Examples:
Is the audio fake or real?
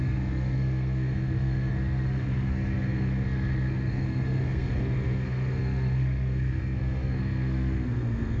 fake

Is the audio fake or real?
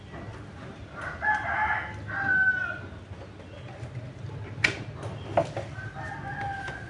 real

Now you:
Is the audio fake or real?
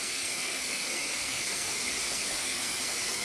fake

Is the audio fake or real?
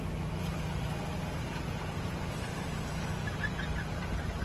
real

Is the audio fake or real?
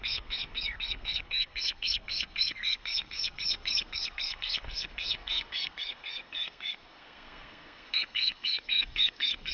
fake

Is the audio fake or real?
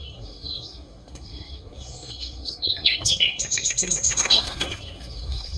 fake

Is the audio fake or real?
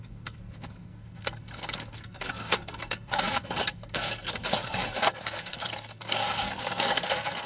fake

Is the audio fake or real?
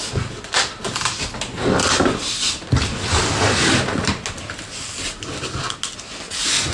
real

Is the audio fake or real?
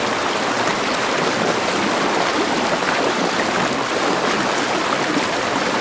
real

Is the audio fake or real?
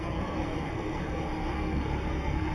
fake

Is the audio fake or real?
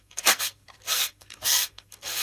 fake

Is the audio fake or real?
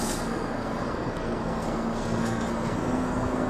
fake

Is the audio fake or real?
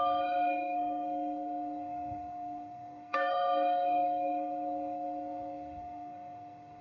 fake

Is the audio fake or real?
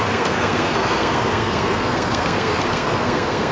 fake